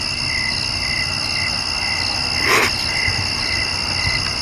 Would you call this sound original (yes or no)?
yes